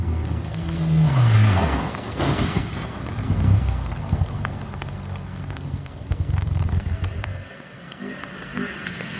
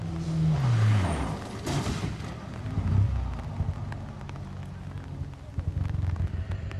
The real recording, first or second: second